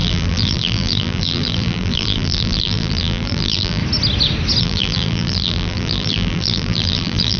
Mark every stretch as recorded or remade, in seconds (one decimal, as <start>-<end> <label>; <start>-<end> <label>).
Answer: 0.0-3.8 remade; 3.8-4.6 recorded; 4.6-7.4 remade